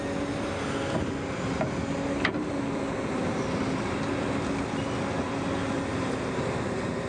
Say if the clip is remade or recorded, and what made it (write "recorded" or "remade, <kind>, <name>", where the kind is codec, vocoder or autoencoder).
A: recorded